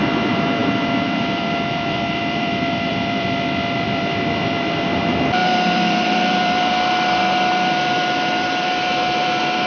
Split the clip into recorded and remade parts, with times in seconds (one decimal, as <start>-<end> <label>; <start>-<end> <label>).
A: 0.0-9.7 remade